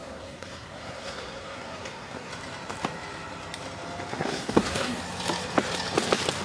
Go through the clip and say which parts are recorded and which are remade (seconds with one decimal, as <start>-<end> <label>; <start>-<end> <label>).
0.0-2.3 remade; 2.3-4.1 recorded; 4.1-5.0 remade; 5.0-6.4 recorded